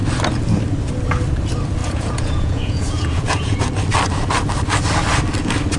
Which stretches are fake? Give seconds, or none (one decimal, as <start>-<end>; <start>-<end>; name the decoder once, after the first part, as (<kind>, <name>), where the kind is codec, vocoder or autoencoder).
1.8-3.6 (vocoder, Vocos)